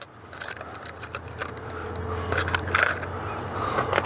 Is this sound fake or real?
real